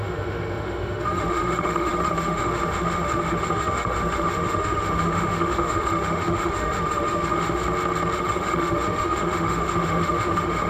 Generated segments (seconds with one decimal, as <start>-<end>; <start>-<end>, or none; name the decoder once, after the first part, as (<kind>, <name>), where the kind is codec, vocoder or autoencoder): 0.0-7.6 (autoencoder, DAC-VAE); 8.2-10.7

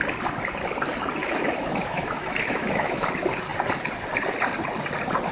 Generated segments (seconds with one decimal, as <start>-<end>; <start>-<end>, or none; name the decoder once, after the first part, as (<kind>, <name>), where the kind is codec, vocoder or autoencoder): 1.2-3.1 (autoencoder, DAC-VAE)

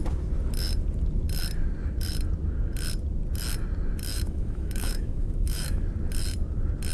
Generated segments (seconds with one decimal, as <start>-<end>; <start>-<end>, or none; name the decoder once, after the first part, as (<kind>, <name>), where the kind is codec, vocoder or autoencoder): 4.1-5.8 (autoencoder, DAC-VAE)

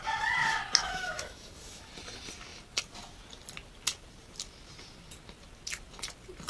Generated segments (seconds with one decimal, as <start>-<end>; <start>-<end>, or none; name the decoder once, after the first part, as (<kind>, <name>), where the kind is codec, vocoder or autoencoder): 0.8-1.9 (autoencoder, DAC-VAE)